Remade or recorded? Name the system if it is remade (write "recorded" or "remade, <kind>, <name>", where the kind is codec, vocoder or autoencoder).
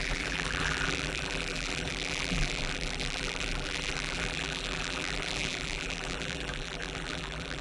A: remade, vocoder, BigVGAN v2